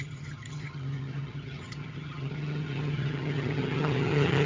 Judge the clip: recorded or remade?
remade